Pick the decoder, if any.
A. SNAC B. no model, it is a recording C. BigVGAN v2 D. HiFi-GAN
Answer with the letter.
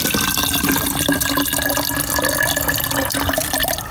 B